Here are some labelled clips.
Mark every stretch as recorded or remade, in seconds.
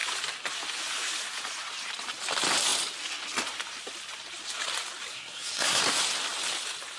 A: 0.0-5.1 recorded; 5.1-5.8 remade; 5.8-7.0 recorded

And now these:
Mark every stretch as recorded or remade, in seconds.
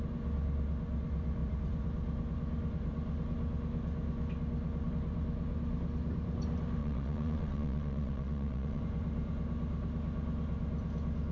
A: 0.0-6.8 recorded; 6.8-8.8 remade; 8.8-11.3 recorded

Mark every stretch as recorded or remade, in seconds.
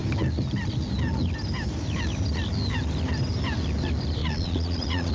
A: 0.0-4.2 recorded; 4.2-5.1 remade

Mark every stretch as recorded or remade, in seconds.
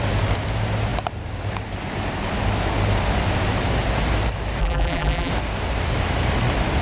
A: 0.0-4.6 recorded; 4.6-5.3 remade; 5.3-6.8 recorded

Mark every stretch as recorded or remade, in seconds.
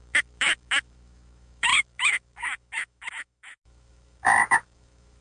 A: 0.0-5.2 remade